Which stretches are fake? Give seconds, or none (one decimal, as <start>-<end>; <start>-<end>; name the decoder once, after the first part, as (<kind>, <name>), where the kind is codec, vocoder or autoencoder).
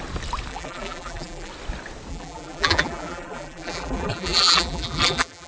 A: 0.5-1.5 (vocoder, BigVGAN v2); 2.1-5.5